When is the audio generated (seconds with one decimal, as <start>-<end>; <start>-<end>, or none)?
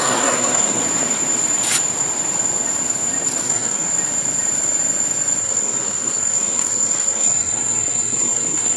0.0-0.8; 3.4-3.9; 5.4-8.8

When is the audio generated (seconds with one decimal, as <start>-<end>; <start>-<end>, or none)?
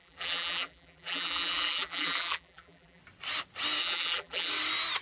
0.0-3.0; 3.8-4.5